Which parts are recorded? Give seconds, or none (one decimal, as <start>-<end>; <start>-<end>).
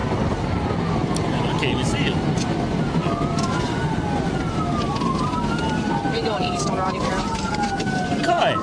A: 0.0-8.6